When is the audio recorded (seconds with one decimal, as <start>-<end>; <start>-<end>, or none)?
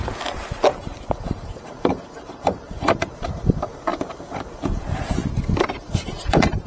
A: 0.0-1.2; 3.9-5.6